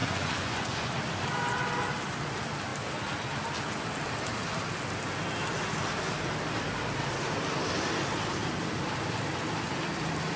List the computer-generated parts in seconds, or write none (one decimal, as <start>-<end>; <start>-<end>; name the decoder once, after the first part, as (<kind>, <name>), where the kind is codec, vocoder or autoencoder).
0.0-0.9 (vocoder, Vocos)